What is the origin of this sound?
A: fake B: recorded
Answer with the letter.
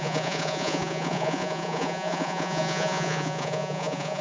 A